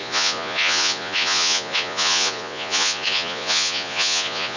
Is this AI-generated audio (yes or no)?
yes